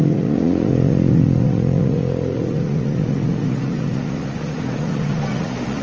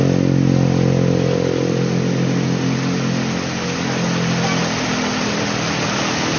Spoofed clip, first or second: first